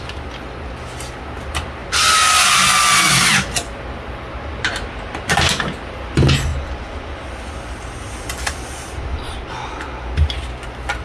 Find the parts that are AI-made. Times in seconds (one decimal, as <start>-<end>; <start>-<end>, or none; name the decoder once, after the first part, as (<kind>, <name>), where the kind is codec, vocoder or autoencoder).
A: none